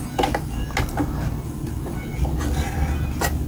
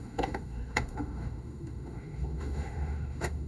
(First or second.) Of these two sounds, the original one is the first